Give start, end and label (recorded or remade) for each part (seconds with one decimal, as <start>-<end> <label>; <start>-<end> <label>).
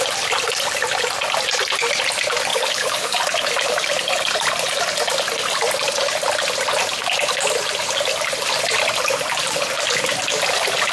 0.0-2.5 recorded; 2.5-3.2 remade; 3.2-10.9 recorded